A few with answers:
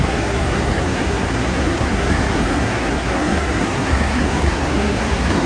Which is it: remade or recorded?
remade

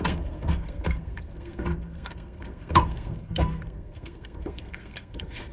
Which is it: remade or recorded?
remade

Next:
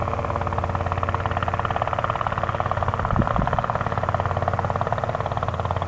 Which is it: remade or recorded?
recorded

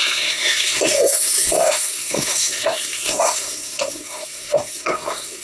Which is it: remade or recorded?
remade